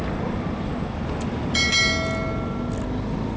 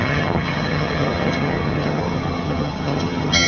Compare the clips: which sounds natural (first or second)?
first